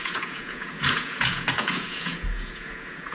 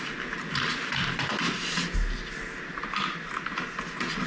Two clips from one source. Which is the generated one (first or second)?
first